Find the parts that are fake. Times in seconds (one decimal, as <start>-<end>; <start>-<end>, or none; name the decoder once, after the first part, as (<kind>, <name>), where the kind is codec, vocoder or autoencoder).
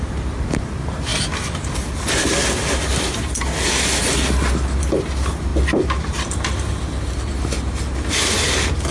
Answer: none